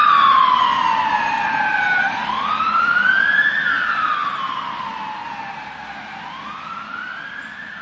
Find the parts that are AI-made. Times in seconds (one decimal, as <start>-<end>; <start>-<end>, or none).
none